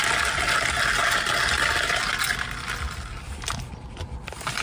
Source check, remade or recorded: recorded